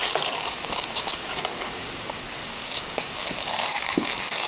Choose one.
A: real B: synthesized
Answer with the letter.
B